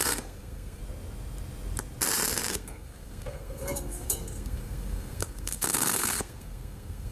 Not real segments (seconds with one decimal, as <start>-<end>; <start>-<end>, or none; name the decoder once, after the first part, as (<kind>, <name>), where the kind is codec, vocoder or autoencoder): 0.0-0.8 (codec, SNAC); 2.5-7.1